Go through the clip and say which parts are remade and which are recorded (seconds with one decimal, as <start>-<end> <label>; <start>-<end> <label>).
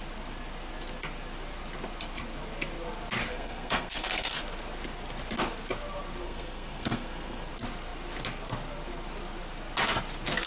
0.0-3.3 recorded; 3.3-4.4 remade; 4.4-6.2 recorded; 6.2-7.5 remade; 7.5-10.5 recorded